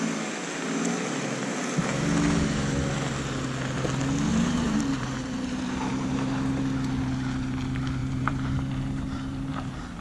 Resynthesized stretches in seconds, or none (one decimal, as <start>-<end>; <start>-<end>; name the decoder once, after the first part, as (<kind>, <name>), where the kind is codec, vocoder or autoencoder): 4.3-6.6 (vocoder, BigVGAN v2); 8.0-9.5

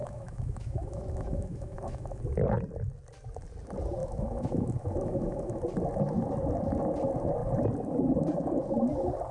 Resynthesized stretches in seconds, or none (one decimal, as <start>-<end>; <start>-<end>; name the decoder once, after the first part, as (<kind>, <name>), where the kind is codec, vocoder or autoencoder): 0.0-2.2 (autoencoder, DAC-VAE); 4.0-5.6

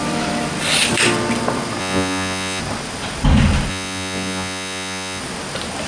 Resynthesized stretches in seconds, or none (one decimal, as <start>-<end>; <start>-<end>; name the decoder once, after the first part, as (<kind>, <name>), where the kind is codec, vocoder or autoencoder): 1.8-2.6 (vocoder, Vocos); 3.7-5.2

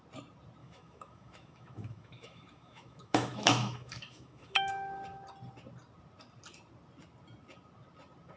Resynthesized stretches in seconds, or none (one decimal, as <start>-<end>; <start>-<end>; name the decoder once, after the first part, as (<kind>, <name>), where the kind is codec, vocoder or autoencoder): 0.6-4.7 (autoencoder, DAC-VAE)

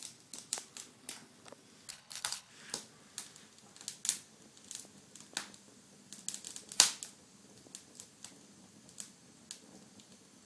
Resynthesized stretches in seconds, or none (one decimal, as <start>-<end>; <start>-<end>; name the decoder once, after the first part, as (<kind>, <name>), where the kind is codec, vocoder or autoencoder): 1.9-2.5 (codec, HILCodec)

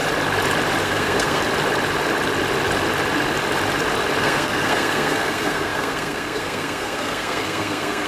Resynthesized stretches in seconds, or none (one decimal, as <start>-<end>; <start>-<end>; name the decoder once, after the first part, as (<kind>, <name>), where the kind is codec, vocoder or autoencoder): 0.8-1.4 (codec, SNAC); 4.2-8.1